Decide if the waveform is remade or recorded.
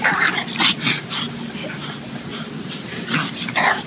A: recorded